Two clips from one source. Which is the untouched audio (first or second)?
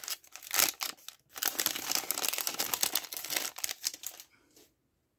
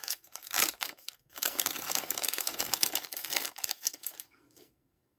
first